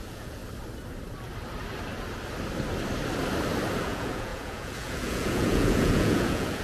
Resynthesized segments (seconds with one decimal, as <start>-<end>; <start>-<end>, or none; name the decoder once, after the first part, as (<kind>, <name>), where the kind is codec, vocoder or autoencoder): 0.0-0.4 (vocoder, Vocos); 3.8-6.6